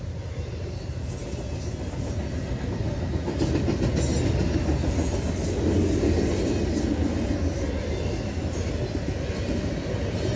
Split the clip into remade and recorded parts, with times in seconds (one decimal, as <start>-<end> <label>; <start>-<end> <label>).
0.0-10.4 recorded